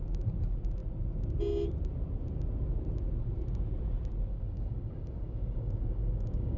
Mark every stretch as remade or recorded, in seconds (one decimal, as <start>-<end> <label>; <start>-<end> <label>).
0.0-4.3 recorded; 4.3-6.6 remade